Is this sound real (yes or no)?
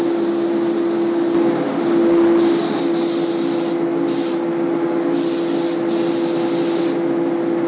yes